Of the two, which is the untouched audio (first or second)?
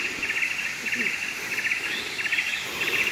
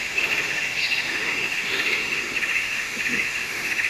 first